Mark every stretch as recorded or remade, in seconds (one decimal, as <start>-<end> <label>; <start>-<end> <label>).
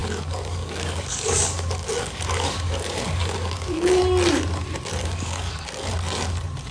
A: 0.0-4.0 remade; 4.0-5.0 recorded; 5.0-5.9 remade; 5.9-6.7 recorded